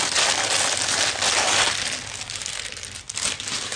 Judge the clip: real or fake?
real